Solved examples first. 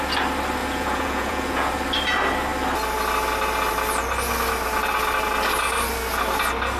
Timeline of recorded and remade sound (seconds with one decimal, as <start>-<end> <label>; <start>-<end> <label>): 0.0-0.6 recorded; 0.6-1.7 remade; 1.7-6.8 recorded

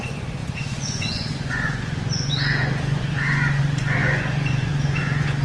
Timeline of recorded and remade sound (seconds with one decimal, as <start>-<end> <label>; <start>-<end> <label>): 0.0-5.4 remade

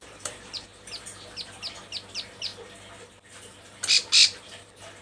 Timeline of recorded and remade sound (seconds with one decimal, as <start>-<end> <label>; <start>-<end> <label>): 0.0-0.7 remade; 0.7-2.1 recorded; 2.1-2.5 remade; 2.5-4.4 recorded; 4.4-5.0 remade